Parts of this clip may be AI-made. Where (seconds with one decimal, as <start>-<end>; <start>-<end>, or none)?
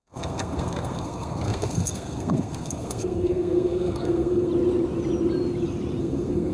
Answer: 0.0-4.5; 6.0-6.5